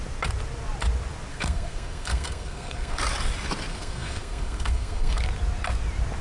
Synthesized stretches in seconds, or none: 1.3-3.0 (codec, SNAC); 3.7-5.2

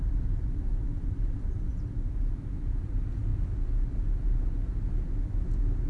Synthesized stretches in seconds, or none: none

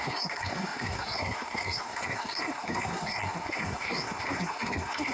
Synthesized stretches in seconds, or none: 0.0-5.1 (codec, SNAC)

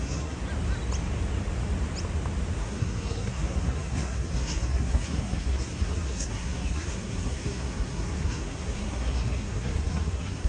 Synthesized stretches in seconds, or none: 0.0-0.4 (codec, SNAC); 2.6-10.5

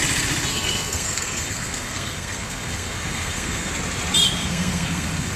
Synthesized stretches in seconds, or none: 0.5-3.7 (codec, SNAC); 4.4-5.4